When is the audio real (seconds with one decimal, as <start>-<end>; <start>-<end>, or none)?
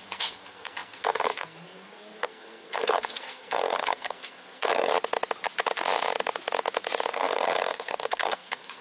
4.9-7.1